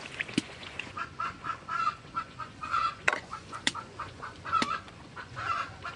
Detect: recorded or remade remade